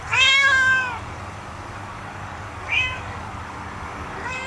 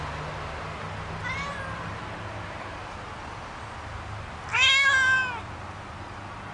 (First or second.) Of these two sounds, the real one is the second